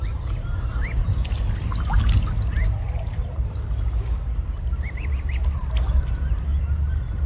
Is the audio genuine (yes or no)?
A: yes